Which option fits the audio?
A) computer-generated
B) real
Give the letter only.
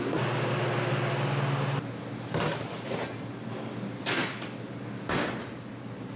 B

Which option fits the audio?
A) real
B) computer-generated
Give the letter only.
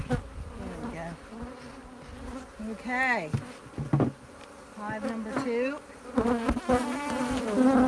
A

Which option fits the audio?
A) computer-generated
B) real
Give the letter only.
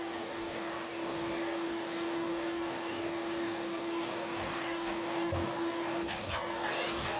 A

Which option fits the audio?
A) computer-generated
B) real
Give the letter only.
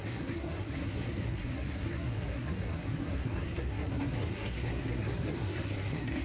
A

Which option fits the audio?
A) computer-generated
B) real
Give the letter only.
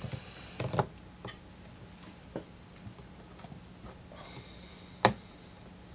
B